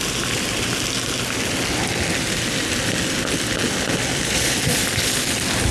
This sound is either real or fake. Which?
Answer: real